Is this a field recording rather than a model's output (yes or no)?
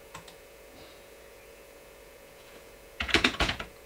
no